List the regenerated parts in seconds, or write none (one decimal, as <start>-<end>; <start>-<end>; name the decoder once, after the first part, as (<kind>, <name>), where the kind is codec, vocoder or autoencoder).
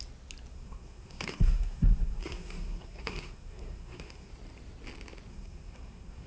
0.5-4.3 (codec, SNAC); 5.3-6.3